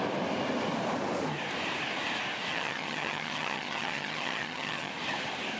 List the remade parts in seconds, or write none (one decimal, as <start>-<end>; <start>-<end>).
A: 2.5-4.9